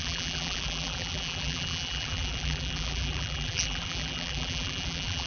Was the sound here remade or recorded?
remade